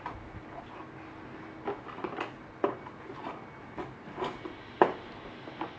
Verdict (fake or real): real